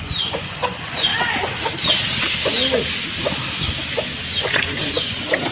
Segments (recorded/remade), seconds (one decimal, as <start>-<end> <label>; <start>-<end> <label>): 0.0-1.1 remade; 1.1-4.4 recorded; 4.4-5.5 remade